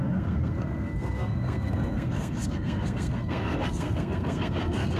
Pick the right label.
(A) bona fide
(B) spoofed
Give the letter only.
B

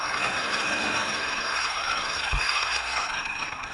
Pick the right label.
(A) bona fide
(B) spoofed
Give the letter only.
B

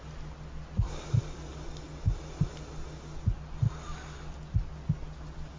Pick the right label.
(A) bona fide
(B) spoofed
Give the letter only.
A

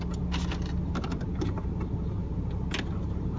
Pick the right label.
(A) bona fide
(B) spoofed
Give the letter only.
A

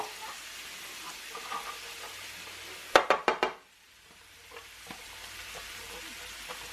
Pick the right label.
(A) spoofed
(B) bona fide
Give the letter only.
B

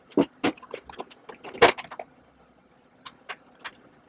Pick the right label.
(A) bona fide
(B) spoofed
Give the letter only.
A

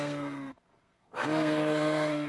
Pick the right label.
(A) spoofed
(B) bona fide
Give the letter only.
A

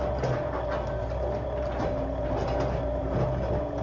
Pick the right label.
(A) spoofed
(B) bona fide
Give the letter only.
B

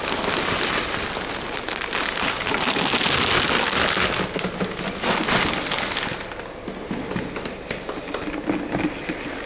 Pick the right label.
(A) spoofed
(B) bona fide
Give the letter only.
B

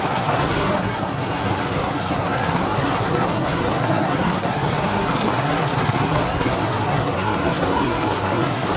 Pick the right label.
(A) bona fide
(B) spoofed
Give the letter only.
B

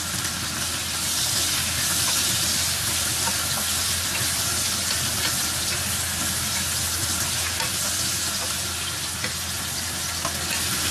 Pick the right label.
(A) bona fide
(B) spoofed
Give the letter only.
A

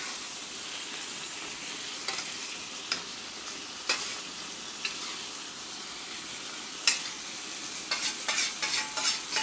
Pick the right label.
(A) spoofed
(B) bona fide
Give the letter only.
B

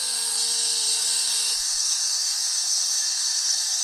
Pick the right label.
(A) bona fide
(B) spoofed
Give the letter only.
B